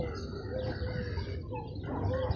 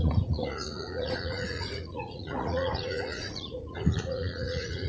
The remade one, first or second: second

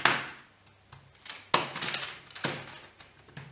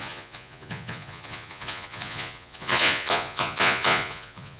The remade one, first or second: second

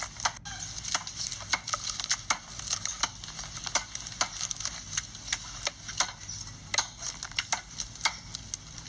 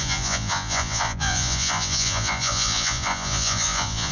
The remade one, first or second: second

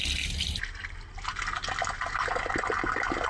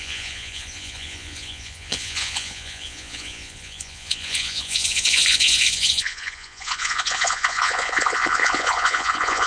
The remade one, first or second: second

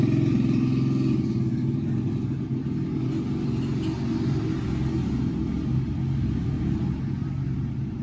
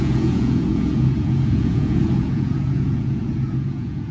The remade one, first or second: second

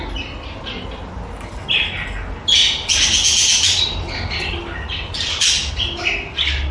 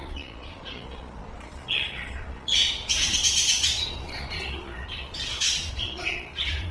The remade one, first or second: second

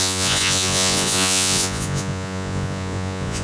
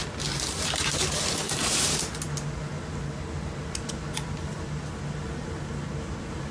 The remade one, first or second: first